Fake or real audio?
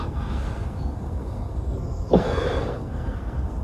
fake